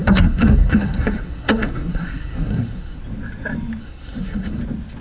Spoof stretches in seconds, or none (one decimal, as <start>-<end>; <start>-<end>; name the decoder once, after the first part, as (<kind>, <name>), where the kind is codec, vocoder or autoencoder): 0.0-3.0 (codec, SNAC); 3.8-4.6